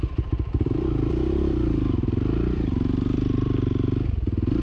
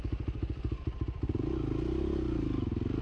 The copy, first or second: first